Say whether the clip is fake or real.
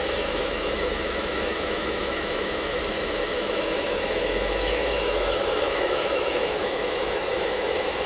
fake